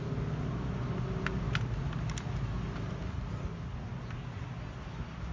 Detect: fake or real real